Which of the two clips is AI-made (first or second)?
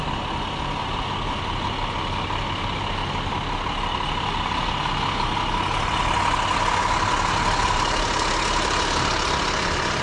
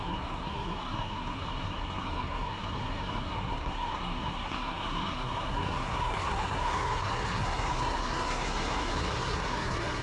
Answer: second